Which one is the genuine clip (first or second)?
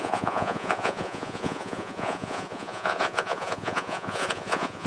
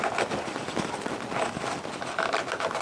second